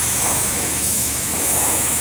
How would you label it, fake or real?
fake